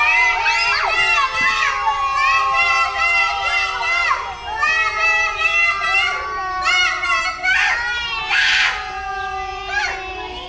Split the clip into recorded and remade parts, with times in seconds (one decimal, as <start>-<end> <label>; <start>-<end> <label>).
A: 0.0-10.5 recorded